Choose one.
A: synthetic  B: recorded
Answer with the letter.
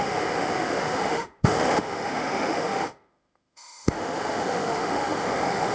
A